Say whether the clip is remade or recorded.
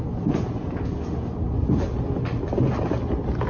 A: recorded